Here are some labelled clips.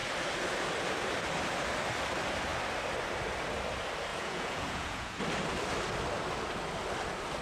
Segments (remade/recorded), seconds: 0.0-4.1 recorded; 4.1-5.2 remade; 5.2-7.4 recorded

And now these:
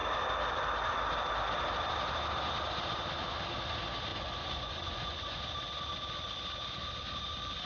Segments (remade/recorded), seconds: 0.0-4.1 recorded; 4.1-5.4 remade; 5.4-7.7 recorded

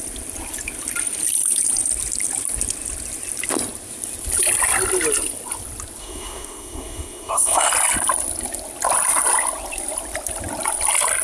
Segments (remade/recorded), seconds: 0.0-6.0 recorded; 6.0-7.7 remade; 7.7-11.2 recorded

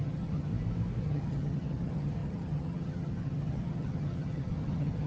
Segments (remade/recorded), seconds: 0.0-0.5 remade; 0.5-1.0 recorded; 1.0-5.1 remade

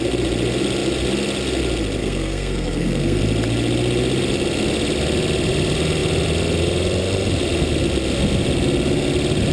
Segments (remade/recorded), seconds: 0.0-2.0 recorded; 2.0-3.2 remade; 3.2-9.5 recorded

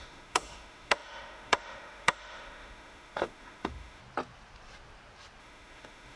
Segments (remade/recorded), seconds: 0.0-4.0 remade; 4.0-5.4 recorded; 5.4-6.2 remade

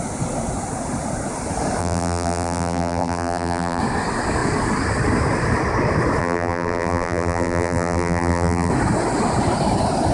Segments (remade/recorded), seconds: 0.0-1.8 recorded; 1.8-3.8 remade; 3.8-6.2 recorded; 6.2-8.7 remade; 8.7-10.1 recorded